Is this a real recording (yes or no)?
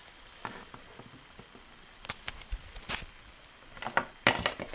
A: yes